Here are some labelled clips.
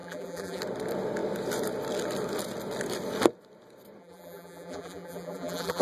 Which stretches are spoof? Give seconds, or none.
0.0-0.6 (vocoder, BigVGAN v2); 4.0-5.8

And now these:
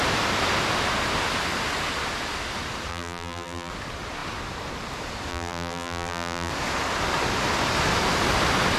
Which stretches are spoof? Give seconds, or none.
2.9-3.7 (vocoder, BigVGAN v2); 5.3-6.5